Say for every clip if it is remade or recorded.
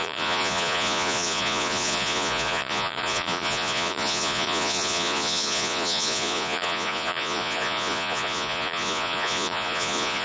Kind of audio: remade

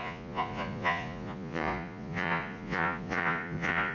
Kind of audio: remade